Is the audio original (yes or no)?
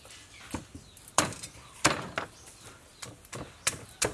no